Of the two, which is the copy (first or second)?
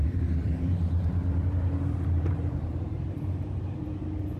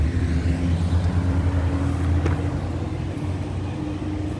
first